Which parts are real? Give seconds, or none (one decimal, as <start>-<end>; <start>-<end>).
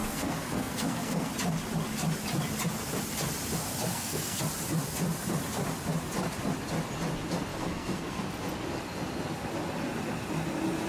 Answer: 1.3-3.9; 4.4-7.5; 8.2-10.9